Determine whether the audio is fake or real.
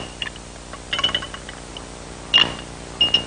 real